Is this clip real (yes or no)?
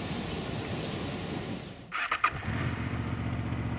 yes